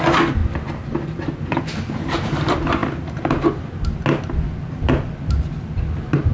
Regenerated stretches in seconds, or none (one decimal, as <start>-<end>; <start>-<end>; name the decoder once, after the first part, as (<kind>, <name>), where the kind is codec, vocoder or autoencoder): 2.8-4.0 (vocoder, BigVGAN v2)